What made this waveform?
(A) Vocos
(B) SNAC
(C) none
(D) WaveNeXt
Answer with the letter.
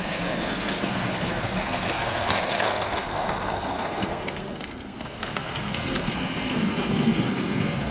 B